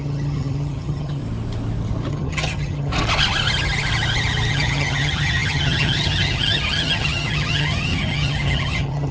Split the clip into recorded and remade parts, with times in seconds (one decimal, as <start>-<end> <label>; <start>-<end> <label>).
0.0-1.2 remade; 1.2-2.1 recorded; 2.1-2.9 remade; 2.9-4.5 recorded; 4.5-9.1 remade